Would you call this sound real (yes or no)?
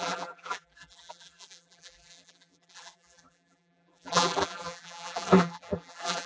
no